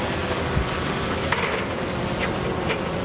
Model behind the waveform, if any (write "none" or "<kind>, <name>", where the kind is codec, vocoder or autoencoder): none